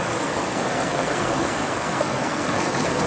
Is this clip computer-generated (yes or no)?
yes